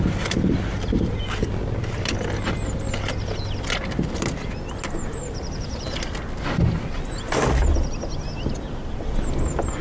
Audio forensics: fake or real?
real